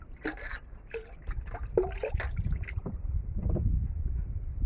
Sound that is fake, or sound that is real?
fake